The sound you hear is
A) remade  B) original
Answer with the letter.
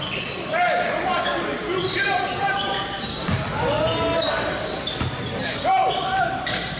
B